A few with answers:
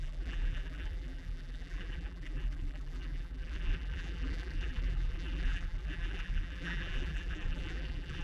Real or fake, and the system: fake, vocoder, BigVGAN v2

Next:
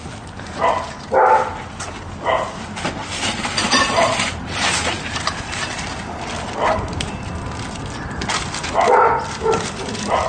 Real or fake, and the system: fake, vocoder, BigVGAN v2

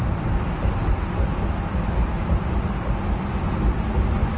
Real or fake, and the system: real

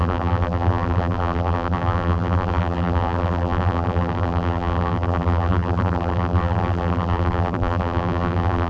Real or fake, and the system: fake, vocoder, BigVGAN v2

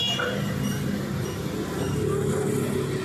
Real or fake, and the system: real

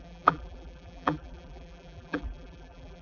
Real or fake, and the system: fake, vocoder, BigVGAN v2